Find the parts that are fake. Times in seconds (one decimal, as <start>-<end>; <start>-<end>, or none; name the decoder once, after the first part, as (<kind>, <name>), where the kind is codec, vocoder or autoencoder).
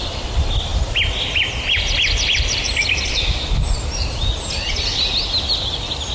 none